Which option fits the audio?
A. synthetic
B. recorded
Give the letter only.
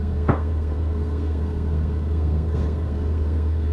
A